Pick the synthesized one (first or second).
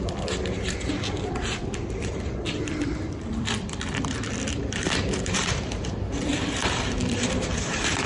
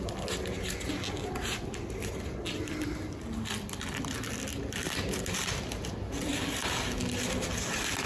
first